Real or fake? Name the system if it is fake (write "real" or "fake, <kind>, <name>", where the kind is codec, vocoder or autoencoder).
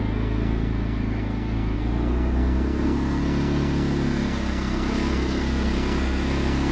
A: fake, codec, SNAC